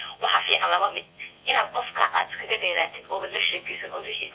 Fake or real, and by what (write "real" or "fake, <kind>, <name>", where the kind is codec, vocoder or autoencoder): fake, vocoder, Vocos